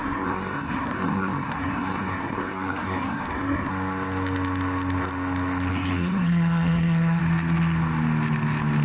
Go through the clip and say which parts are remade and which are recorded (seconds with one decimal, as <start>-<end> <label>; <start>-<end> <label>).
0.0-3.7 remade; 3.7-5.7 recorded; 5.7-7.2 remade; 7.2-8.8 recorded